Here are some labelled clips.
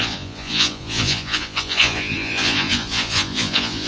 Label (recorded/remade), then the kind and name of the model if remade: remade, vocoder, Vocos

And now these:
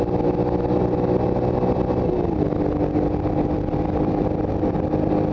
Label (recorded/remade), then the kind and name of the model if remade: recorded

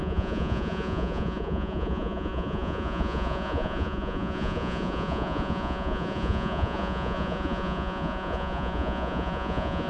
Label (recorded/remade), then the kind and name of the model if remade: remade, vocoder, Vocos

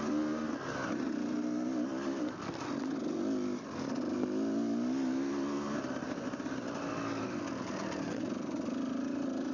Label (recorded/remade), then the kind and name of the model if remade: recorded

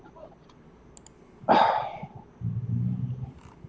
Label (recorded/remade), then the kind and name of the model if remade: recorded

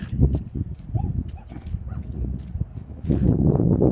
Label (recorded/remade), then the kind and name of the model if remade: remade, vocoder, Vocos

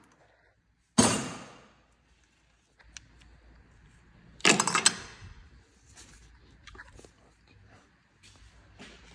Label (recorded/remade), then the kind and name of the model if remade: recorded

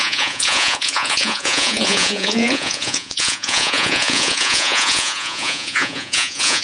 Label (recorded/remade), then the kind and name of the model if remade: remade, vocoder, Vocos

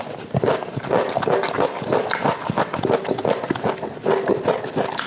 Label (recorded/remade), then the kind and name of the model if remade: recorded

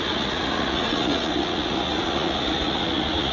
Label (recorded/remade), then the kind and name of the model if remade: remade, vocoder, Vocos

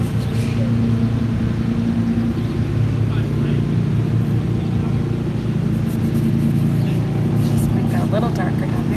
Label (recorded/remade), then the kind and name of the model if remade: recorded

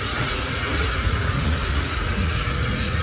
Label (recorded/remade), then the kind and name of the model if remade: remade, vocoder, Vocos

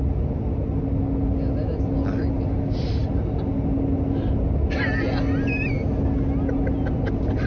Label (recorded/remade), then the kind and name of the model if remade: recorded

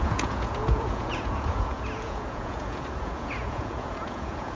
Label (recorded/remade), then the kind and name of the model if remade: remade, vocoder, Vocos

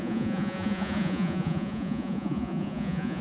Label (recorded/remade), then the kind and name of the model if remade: remade, vocoder, Vocos